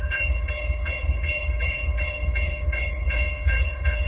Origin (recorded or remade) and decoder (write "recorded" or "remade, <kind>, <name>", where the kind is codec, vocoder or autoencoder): remade, codec, HILCodec